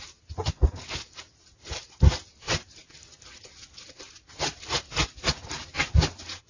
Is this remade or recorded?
recorded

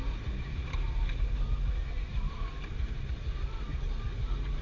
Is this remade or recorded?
recorded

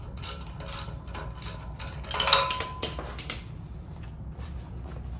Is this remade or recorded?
recorded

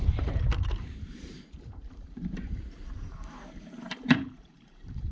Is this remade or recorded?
remade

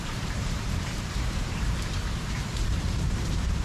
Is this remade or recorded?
remade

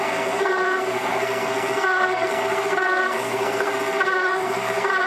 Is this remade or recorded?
remade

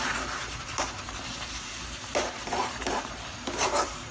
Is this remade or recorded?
remade